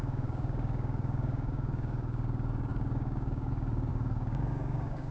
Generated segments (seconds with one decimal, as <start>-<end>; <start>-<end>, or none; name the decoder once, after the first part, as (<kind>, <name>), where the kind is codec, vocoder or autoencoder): 0.0-5.1 (codec, DAC)